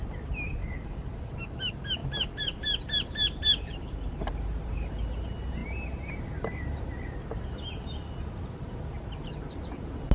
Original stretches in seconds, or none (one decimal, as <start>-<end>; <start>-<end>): 0.0-10.1